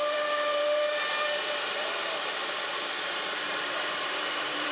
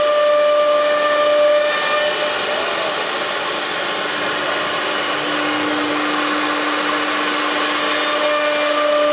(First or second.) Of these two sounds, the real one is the second